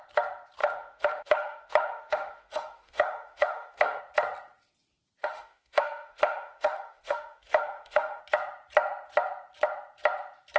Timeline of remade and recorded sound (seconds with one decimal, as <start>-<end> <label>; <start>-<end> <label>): 0.0-0.6 recorded; 0.6-4.0 remade; 4.0-5.2 recorded; 5.2-8.2 remade; 8.2-10.6 recorded